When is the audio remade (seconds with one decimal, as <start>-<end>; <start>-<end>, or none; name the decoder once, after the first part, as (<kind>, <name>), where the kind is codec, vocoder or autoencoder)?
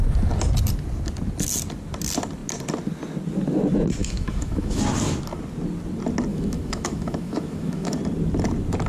4.0-4.8 (autoencoder, DAC-VAE); 6.3-8.0